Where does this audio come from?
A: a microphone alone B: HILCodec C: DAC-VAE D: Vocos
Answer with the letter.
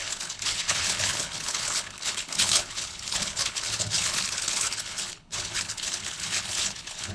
B